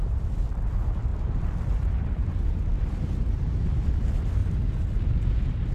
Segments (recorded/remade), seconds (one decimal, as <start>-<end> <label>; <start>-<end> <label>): 0.0-1.1 remade; 1.1-1.6 recorded; 1.6-4.4 remade; 4.4-5.1 recorded; 5.1-5.7 remade